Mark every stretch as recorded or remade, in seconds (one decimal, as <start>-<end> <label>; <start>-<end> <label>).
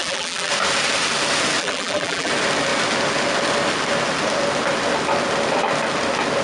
0.0-0.5 remade; 0.5-1.6 recorded; 1.6-2.3 remade; 2.3-6.4 recorded